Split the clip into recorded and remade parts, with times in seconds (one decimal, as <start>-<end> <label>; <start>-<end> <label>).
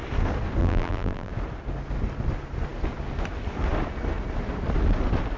0.0-0.6 recorded; 0.6-1.3 remade; 1.3-5.4 recorded